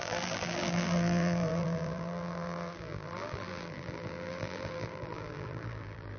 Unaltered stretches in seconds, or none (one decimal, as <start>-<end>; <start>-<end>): none